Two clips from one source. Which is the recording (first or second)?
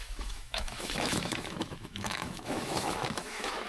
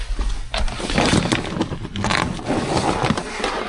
second